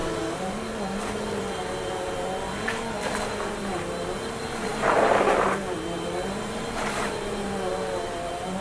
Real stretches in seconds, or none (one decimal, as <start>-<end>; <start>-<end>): none